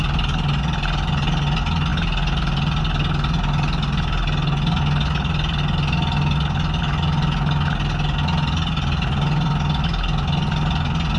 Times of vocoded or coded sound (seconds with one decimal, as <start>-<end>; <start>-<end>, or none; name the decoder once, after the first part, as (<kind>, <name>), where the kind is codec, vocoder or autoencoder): none